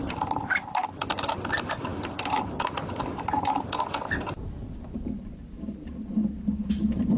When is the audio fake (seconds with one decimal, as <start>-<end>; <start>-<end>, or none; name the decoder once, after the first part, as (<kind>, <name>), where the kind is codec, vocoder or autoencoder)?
0.0-5.4 (vocoder, BigVGAN v2); 6.7-7.2